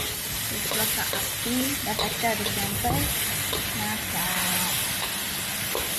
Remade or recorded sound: recorded